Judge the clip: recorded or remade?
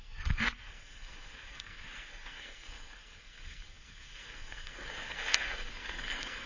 remade